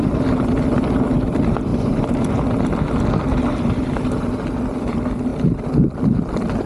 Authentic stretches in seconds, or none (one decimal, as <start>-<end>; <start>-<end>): 0.0-1.7; 2.4-6.7